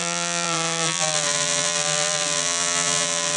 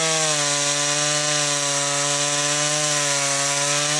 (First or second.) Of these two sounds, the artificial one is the first